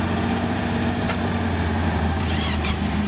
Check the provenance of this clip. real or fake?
fake